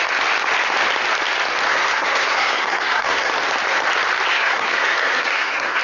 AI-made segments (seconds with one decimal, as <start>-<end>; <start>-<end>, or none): 1.7-3.3; 4.3-5.8